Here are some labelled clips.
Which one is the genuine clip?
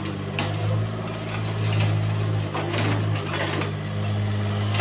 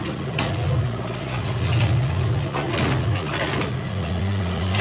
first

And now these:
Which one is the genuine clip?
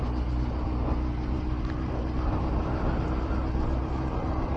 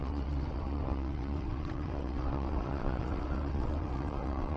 first